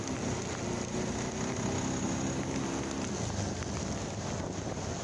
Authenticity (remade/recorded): recorded